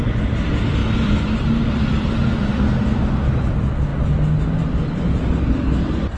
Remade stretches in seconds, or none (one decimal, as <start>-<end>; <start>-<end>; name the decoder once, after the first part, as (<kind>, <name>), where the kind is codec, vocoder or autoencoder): none